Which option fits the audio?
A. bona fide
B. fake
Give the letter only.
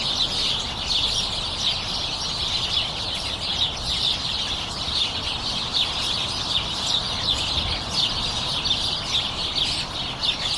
A